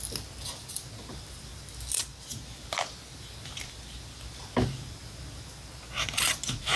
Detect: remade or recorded recorded